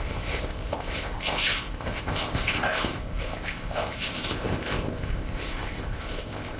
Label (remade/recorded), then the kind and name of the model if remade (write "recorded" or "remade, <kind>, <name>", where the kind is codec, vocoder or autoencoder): remade, codec, ZipCodec